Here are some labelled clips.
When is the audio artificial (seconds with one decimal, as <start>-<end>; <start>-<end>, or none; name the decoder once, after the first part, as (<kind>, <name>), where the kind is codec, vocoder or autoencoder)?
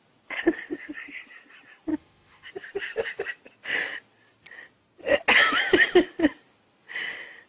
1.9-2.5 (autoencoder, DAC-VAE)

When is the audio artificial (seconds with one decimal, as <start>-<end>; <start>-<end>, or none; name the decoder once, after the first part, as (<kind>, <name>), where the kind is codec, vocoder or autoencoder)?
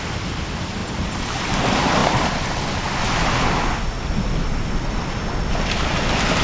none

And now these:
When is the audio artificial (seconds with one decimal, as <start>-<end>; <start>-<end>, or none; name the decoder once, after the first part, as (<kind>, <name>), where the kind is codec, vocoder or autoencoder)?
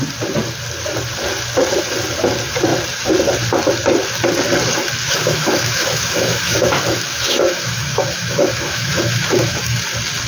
5.0-9.8 (autoencoder, DAC-VAE)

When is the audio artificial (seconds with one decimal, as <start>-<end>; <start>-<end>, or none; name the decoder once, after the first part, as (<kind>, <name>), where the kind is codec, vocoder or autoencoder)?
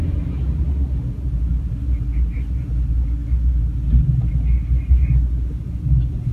none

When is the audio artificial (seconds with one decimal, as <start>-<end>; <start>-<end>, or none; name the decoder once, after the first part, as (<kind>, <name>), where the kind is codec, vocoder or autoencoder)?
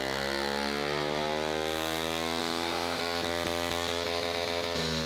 2.4-3.0 (autoencoder, DAC-VAE)